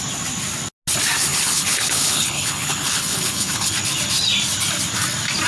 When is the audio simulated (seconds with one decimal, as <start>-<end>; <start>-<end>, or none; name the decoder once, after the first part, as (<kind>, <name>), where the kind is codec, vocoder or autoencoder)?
1.3-3.7 (codec, HILCodec)